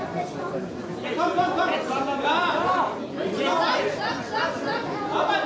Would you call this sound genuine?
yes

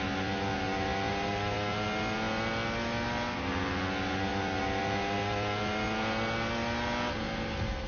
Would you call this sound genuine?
yes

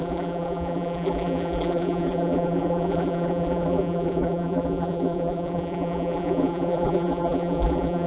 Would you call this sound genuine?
no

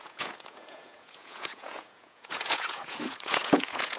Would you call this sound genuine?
no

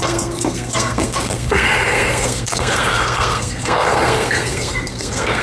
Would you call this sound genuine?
no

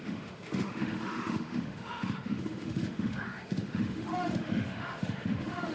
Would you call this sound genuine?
no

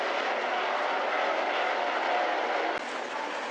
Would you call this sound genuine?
yes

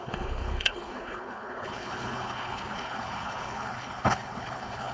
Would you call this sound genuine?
no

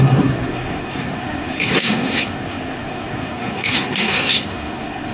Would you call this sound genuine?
no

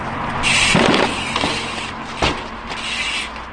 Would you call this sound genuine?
yes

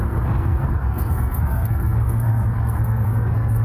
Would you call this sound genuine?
no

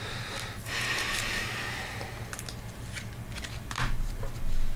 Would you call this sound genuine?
yes